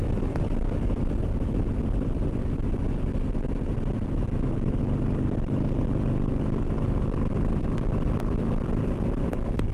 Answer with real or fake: fake